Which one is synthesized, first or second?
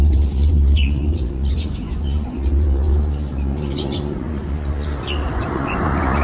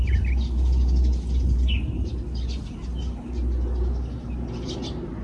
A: first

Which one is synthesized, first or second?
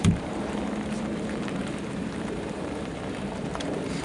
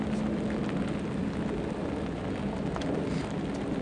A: first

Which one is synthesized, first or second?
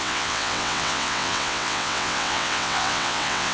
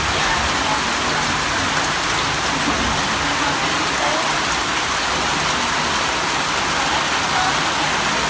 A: first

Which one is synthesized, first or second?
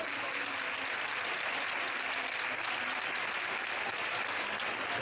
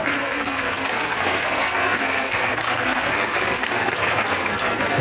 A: second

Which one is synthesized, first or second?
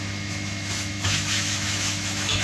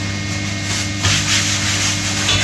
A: first